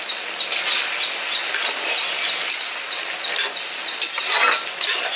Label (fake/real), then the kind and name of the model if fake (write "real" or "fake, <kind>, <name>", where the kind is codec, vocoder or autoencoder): real